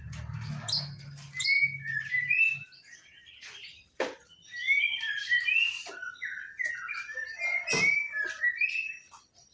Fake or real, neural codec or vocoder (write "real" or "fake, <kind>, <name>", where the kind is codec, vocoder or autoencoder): real